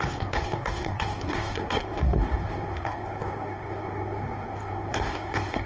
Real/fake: fake